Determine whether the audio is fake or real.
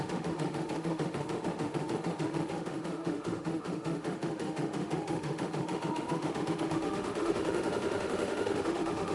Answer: fake